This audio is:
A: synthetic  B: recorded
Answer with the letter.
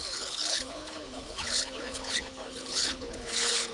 A